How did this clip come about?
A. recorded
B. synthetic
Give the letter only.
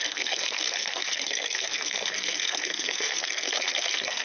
B